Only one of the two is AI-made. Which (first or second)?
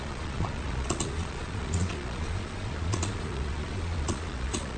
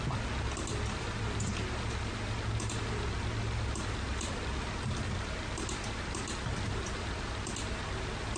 first